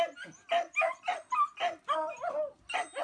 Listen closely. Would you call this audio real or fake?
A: real